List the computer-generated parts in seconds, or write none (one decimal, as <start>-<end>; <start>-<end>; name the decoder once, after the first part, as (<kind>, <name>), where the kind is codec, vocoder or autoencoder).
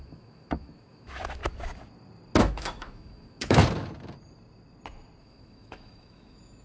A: 0.0-1.4 (autoencoder, DAC-VAE); 2.4-3.6; 5.2-6.6